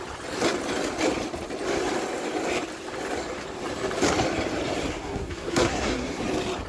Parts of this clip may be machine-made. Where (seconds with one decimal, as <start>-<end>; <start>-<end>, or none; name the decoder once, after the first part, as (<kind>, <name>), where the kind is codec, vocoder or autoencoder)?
4.9-6.2 (codec, SNAC)